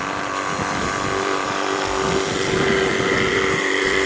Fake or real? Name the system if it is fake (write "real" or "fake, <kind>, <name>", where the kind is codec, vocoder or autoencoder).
fake, vocoder, BigVGAN v2